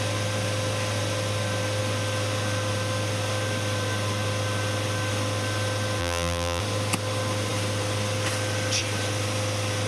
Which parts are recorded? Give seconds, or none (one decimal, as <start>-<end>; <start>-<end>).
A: 0.0-6.0; 6.6-9.9